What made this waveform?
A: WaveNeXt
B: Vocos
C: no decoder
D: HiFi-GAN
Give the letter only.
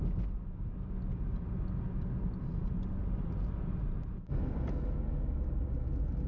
C